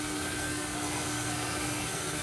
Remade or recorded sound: remade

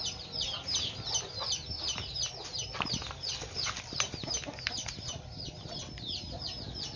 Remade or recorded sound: recorded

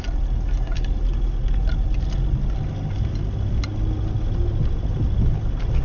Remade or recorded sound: recorded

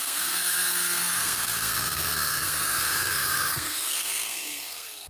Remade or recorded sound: remade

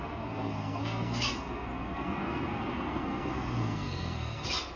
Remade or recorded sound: remade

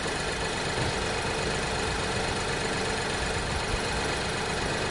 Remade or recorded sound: recorded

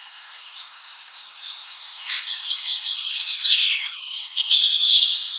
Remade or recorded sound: remade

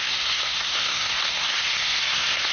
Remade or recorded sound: remade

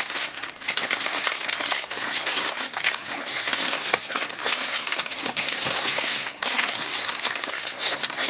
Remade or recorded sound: remade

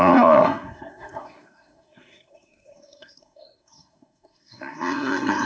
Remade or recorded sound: remade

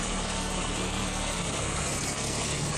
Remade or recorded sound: remade